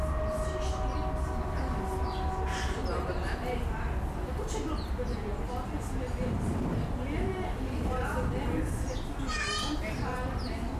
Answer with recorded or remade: recorded